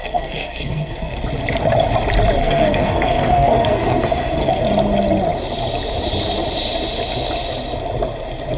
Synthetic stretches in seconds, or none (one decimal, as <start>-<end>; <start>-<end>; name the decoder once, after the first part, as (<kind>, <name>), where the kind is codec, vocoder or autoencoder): 0.0-1.2 (codec, SNAC); 2.4-4.6